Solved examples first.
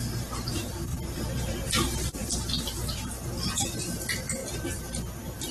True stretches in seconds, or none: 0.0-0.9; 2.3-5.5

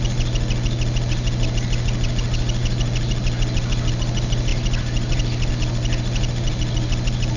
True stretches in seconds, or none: 0.0-4.5; 5.5-7.4

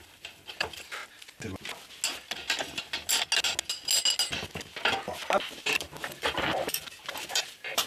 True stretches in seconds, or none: 1.0-5.4

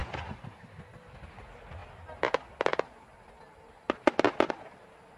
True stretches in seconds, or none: 0.7-5.2

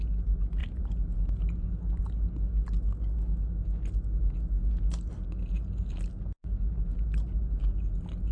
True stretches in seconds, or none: 0.0-0.6; 2.0-8.3